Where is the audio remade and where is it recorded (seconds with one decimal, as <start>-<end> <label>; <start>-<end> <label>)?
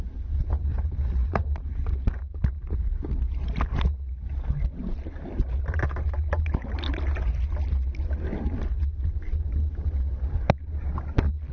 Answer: 0.0-0.7 recorded; 0.7-1.7 remade; 1.7-11.5 recorded